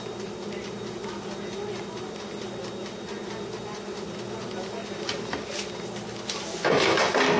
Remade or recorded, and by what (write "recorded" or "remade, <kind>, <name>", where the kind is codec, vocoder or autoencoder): recorded